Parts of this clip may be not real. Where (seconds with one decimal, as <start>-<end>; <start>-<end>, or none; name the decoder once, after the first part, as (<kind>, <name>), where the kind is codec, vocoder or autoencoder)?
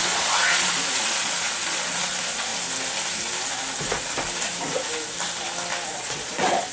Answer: 0.0-2.5 (vocoder, Vocos); 5.9-6.7